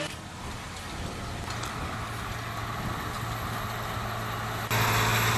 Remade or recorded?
recorded